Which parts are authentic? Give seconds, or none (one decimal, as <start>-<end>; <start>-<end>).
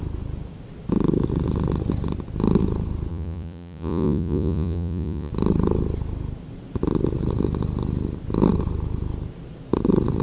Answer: 0.0-3.1; 5.3-10.2